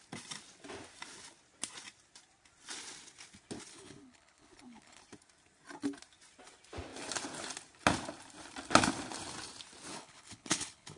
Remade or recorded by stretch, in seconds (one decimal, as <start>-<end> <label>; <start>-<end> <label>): 0.0-3.7 recorded; 3.7-5.0 remade; 5.0-9.9 recorded; 9.9-11.0 remade